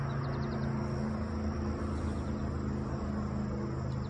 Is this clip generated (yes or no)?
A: no